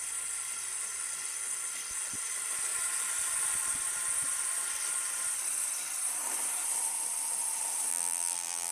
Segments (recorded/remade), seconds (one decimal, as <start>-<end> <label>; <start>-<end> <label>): 0.0-7.9 recorded; 7.9-8.7 remade

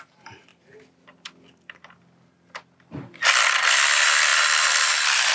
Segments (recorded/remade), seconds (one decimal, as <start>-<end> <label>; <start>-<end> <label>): 0.0-0.5 remade; 0.5-3.6 recorded; 3.6-5.3 remade

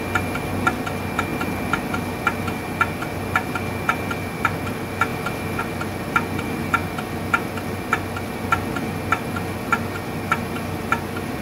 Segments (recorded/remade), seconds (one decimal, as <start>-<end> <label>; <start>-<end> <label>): 0.0-11.4 recorded

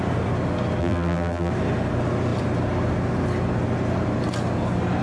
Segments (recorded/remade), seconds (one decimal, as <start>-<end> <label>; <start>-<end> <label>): 0.0-0.8 recorded; 0.8-1.5 remade; 1.5-5.0 recorded

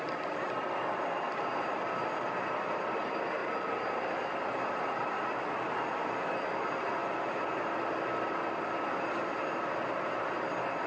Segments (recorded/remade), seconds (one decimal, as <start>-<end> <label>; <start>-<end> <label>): 0.0-10.9 recorded

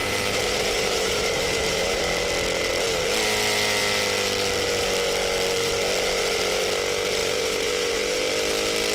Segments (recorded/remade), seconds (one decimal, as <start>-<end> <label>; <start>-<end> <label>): 0.0-2.0 remade; 2.0-7.2 recorded; 7.2-8.3 remade; 8.3-8.9 recorded

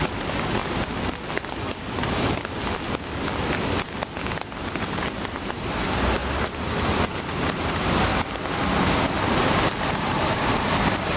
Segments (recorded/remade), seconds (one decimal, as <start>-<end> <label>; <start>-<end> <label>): 0.0-0.6 remade; 0.6-4.8 recorded; 4.8-6.2 remade; 6.2-7.2 recorded; 7.2-8.1 remade; 8.1-9.8 recorded; 9.8-11.2 remade

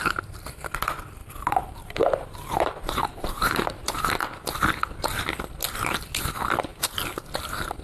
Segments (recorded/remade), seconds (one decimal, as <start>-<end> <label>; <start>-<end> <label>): 0.0-1.2 recorded; 1.2-4.1 remade; 4.1-6.7 recorded; 6.7-7.8 remade